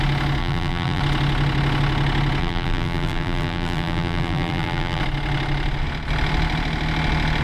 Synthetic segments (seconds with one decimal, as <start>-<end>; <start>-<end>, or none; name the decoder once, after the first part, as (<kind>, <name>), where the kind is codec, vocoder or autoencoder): 0.4-1.0 (vocoder, BigVGAN v2); 2.4-5.0